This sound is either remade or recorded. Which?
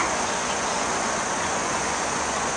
remade